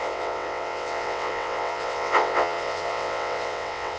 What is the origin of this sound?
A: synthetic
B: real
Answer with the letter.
A